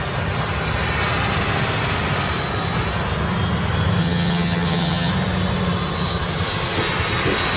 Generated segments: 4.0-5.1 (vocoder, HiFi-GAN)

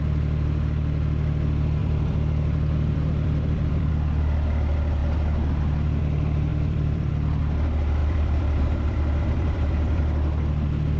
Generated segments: 1.8-3.9 (vocoder, BigVGAN v2); 6.5-7.1; 8.0-10.0

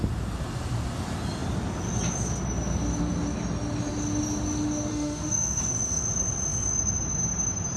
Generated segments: 4.9-5.6 (autoencoder, DAC-VAE)

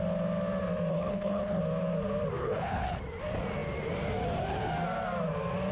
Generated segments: 0.9-1.6 (codec, HILCodec); 2.4-3.0

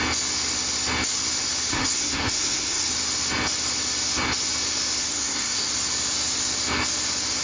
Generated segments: 1.7-2.9 (codec, SNAC); 5.1-5.7